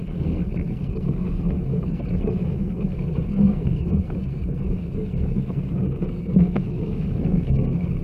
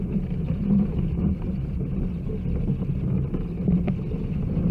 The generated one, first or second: first